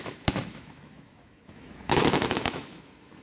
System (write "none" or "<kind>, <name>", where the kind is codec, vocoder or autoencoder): autoencoder, DAC-VAE